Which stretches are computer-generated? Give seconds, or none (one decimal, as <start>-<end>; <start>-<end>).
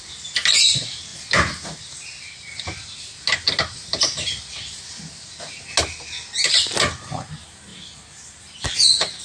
none